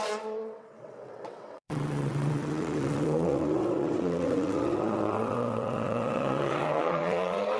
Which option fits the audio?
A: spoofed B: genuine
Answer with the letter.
A